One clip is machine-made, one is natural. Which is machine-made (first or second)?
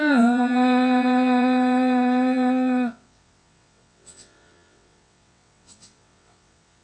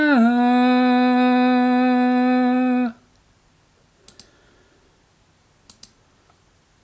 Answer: first